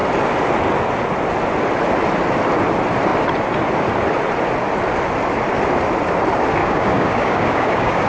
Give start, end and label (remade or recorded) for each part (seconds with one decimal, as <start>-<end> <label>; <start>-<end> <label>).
0.0-6.6 recorded; 6.6-8.1 remade

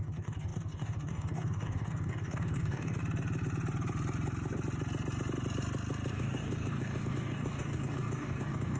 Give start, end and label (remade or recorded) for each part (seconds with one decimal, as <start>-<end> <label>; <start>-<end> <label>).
0.0-3.0 remade; 3.0-6.1 recorded; 6.1-8.8 remade